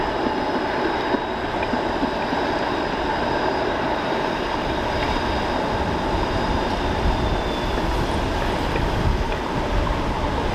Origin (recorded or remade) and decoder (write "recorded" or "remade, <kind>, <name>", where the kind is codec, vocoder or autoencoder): recorded